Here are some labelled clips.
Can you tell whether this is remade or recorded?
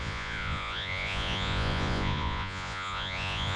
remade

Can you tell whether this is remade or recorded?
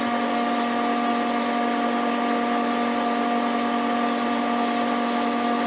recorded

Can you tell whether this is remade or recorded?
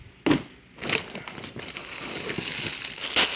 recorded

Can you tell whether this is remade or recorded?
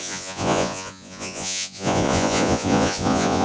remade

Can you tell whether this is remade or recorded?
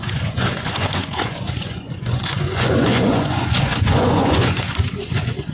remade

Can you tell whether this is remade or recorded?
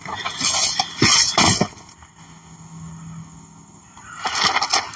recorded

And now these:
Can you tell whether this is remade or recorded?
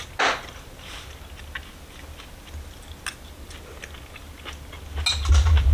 recorded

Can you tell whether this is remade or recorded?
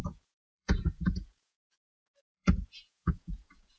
remade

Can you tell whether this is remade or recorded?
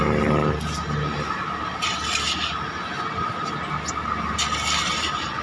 recorded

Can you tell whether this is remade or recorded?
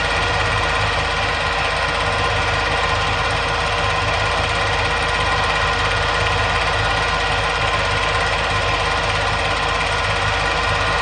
recorded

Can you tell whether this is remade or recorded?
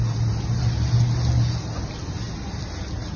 recorded